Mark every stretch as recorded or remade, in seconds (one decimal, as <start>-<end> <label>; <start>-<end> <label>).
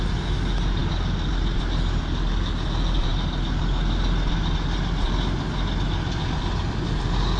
0.0-7.4 recorded